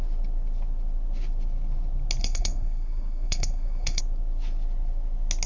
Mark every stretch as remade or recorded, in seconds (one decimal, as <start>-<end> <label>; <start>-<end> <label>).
0.0-2.2 recorded; 2.2-4.0 remade; 4.0-5.5 recorded